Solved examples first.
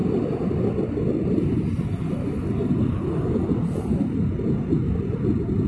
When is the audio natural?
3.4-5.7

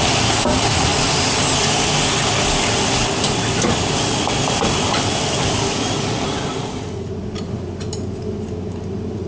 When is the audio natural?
0.0-9.3

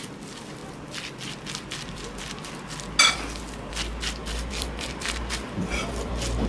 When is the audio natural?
0.0-4.2

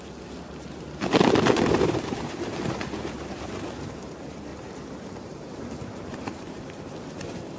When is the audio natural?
0.0-4.5; 6.9-7.6

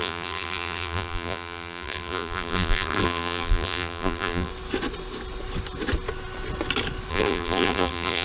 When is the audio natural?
4.5-7.1